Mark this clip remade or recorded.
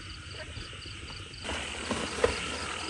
recorded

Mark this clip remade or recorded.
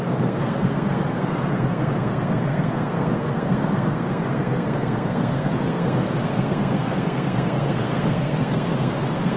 remade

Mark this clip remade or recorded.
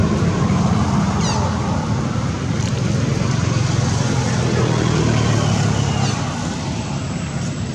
recorded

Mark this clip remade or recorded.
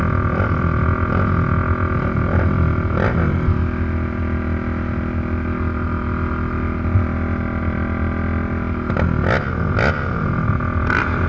recorded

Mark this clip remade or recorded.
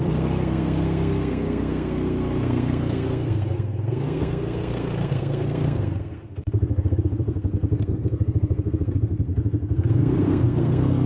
remade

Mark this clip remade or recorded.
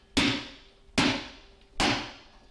recorded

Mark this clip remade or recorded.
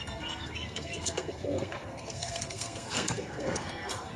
remade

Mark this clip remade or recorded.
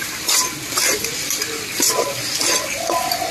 recorded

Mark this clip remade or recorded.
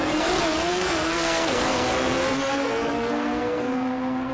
remade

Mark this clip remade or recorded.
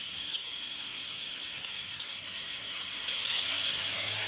remade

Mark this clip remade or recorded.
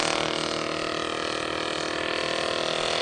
recorded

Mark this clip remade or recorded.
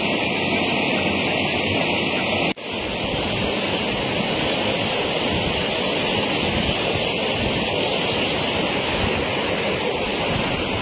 recorded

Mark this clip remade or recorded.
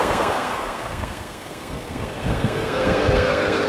remade